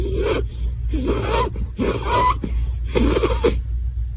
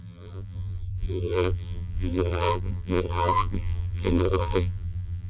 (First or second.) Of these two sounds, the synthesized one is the second